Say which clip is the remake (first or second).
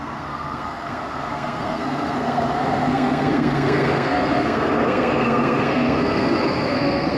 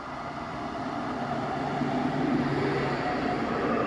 first